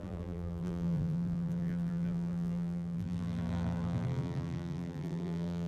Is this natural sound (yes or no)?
no